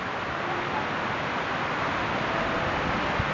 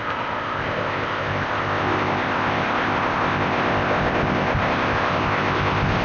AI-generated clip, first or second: second